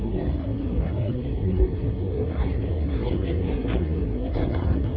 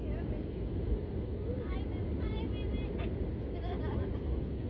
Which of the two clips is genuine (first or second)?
second